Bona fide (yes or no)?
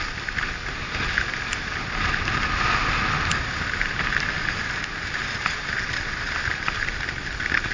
yes